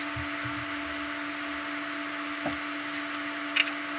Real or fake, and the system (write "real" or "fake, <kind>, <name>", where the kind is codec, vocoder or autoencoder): real